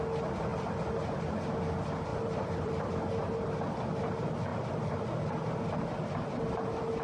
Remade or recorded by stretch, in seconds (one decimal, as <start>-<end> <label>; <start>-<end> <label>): 0.0-0.5 recorded; 0.5-1.2 remade; 1.2-2.1 recorded; 2.1-2.9 remade; 2.9-4.5 recorded; 4.5-5.1 remade; 5.1-7.0 recorded